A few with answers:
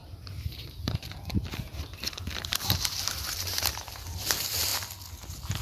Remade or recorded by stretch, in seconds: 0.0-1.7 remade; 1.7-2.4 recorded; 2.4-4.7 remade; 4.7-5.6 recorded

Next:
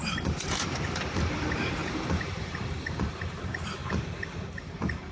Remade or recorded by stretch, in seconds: 0.0-3.8 remade; 3.8-4.6 recorded; 4.6-5.1 remade

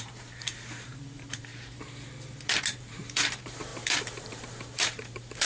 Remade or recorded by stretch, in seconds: 0.0-1.5 remade; 1.5-2.8 recorded; 2.8-5.5 remade

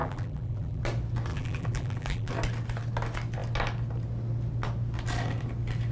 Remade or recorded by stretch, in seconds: 0.0-0.8 remade; 0.8-1.3 recorded; 1.3-2.3 remade; 2.3-5.9 recorded

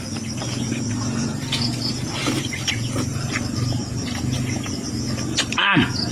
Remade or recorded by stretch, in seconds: 0.0-6.1 recorded

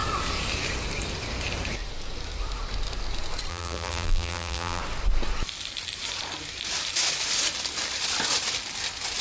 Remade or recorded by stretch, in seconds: 0.0-3.5 recorded; 3.5-4.8 remade; 4.8-9.2 recorded

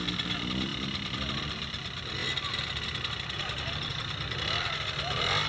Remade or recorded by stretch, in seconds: 0.0-0.7 recorded; 0.7-1.4 remade; 1.4-5.5 recorded